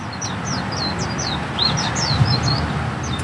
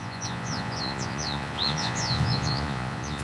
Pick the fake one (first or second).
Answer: second